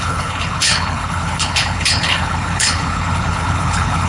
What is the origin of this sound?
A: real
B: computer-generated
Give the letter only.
B